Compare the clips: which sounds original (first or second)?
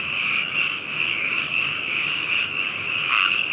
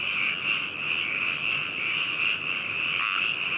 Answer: second